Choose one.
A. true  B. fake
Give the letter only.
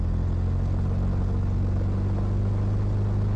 A